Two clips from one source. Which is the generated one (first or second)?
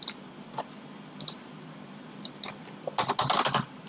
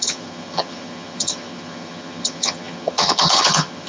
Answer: second